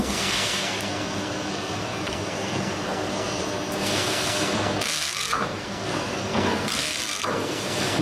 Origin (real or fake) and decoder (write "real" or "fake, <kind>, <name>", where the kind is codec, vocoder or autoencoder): fake, codec, SNAC